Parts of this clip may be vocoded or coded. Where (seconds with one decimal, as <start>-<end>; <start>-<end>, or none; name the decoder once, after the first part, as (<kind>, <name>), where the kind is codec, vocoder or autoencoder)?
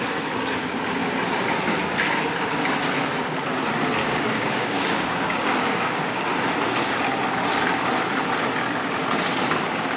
4.0-6.2 (codec, DAC)